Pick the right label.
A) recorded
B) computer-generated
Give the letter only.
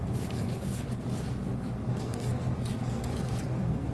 B